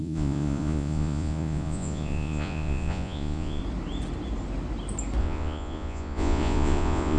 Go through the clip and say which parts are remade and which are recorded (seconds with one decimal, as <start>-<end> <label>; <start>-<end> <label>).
0.0-3.6 remade; 3.6-5.2 recorded; 5.2-7.2 remade